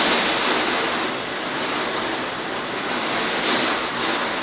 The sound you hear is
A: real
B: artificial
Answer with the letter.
A